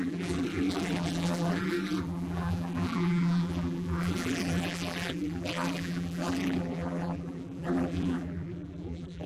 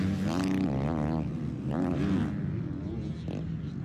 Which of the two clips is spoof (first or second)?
first